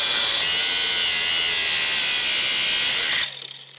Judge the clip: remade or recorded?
recorded